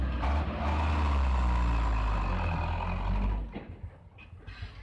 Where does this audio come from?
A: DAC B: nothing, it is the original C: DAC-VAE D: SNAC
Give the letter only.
B